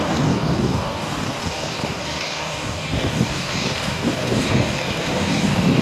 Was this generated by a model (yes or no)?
yes